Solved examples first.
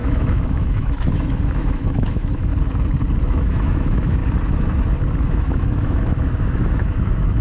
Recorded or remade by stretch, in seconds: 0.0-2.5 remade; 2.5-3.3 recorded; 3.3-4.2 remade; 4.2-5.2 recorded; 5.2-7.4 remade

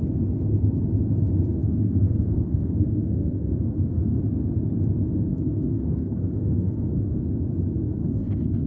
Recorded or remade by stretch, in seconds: 0.0-1.6 recorded; 1.6-4.2 remade; 4.2-5.3 recorded; 5.3-7.2 remade; 7.2-8.0 recorded; 8.0-8.7 remade

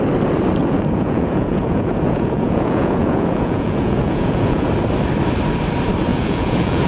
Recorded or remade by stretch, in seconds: 0.0-0.6 recorded; 0.6-4.7 remade; 4.7-6.1 recorded; 6.1-6.9 remade

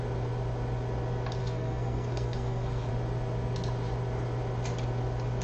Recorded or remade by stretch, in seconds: 0.0-1.4 recorded; 1.4-2.9 remade; 2.9-5.4 recorded

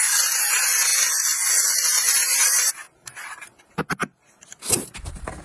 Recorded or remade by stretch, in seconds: 0.0-0.9 remade; 0.9-2.7 recorded; 2.7-5.4 remade

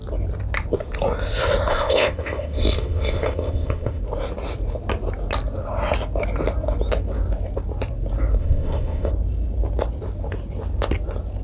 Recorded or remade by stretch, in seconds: 0.0-1.7 recorded; 1.7-4.0 remade; 4.0-8.4 recorded; 8.4-9.1 remade; 9.1-11.4 recorded

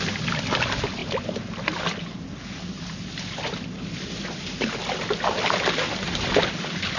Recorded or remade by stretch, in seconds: 0.0-7.0 recorded